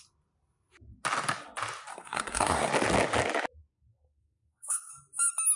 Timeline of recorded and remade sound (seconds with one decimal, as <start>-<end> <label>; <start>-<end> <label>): 0.0-1.9 recorded; 1.9-2.7 remade; 2.7-3.7 recorded; 3.7-4.9 remade; 4.9-5.6 recorded